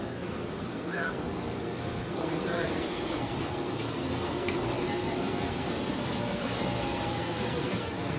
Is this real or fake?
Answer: fake